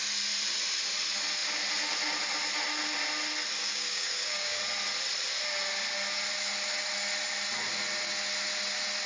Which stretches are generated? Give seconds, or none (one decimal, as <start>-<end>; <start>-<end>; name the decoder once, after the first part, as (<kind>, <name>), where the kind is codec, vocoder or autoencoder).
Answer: 3.6-4.6 (codec, DAC)